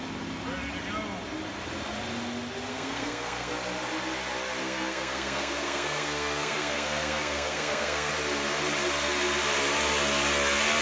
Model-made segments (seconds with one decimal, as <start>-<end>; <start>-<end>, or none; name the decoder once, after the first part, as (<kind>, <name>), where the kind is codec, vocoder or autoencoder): 2.7-3.5 (codec, SNAC); 4.6-8.1